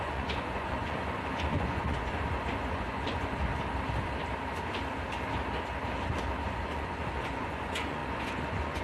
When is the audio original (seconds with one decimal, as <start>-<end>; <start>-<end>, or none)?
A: 3.5-6.4